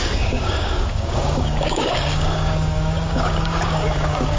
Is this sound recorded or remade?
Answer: remade